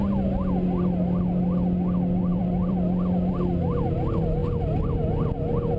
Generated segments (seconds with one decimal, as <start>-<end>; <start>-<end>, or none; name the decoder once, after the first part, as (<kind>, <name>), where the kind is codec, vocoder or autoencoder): 2.3-3.3 (vocoder, BigVGAN v2)